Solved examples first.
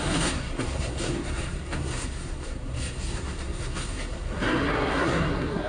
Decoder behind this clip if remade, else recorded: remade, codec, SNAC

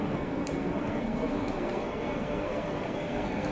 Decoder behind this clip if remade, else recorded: remade, codec, SNAC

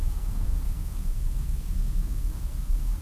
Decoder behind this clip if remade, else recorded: remade, codec, SNAC